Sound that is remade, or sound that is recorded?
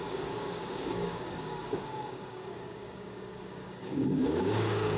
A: remade